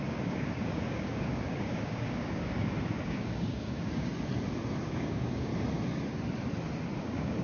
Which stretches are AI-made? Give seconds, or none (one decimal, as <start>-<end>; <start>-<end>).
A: 0.0-4.1; 4.8-5.5; 7.0-7.4